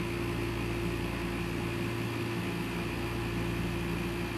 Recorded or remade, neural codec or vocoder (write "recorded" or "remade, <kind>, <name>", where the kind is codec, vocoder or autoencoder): recorded